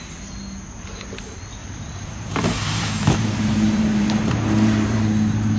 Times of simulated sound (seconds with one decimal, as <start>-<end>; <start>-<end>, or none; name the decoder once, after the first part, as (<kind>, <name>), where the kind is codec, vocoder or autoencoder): 1.6-5.0 (vocoder, BigVGAN v2)